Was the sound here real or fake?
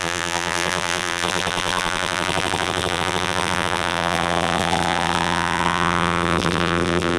fake